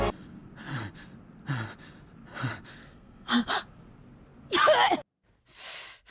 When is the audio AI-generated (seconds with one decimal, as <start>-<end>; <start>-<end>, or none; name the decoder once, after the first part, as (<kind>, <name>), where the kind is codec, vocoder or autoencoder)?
2.8-3.5 (codec, SNAC)